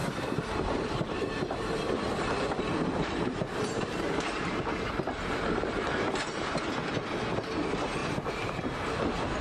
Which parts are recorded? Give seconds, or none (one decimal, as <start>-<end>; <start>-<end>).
4.6-8.0; 8.6-9.4